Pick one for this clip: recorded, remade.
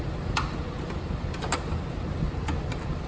recorded